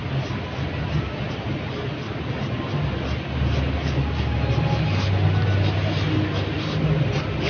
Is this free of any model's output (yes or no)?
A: yes